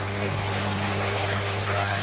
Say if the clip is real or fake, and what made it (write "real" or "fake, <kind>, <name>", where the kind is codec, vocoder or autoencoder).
fake, codec, SNAC